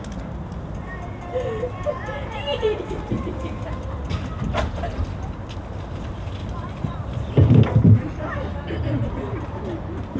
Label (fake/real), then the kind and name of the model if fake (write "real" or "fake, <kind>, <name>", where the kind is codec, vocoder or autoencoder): real